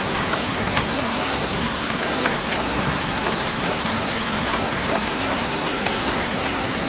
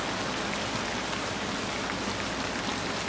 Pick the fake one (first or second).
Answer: first